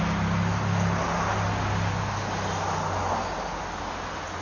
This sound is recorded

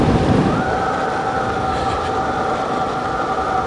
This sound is remade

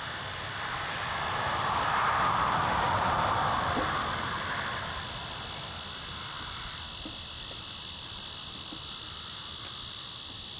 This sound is recorded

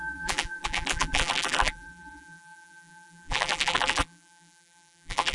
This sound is remade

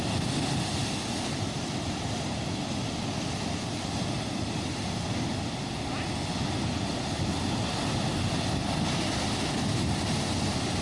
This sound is recorded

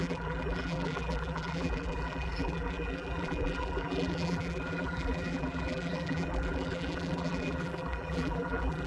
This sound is remade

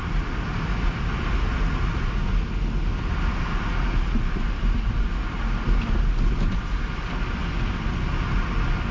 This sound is recorded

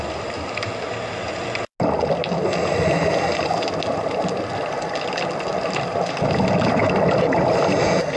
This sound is recorded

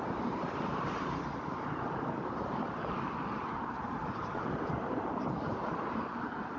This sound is remade